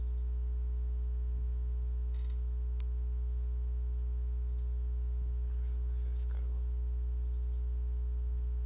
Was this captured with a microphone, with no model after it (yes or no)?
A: yes